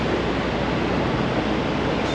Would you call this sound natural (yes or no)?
yes